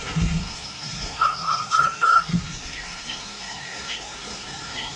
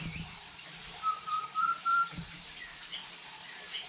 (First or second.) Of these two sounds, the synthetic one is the first